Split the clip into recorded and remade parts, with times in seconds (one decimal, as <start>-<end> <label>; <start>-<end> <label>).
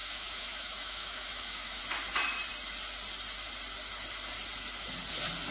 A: 0.0-1.8 remade; 1.8-5.5 recorded